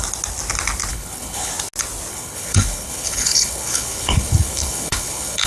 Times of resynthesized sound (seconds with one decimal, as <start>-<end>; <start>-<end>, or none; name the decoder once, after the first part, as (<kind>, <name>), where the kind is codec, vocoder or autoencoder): 0.9-1.5 (codec, HILCodec); 2.1-5.5

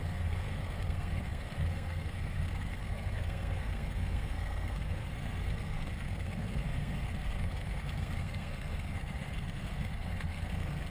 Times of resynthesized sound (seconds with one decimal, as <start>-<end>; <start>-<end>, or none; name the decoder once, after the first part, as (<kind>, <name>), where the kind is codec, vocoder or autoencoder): 0.0-10.9 (codec, SNAC)

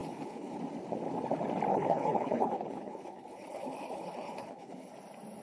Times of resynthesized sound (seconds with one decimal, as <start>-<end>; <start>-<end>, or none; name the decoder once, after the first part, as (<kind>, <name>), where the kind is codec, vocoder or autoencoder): 0.0-0.6 (codec, HILCodec); 1.7-4.9